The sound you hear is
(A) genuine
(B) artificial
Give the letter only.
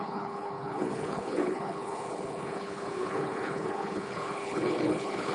B